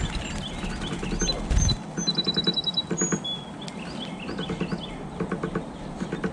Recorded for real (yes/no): yes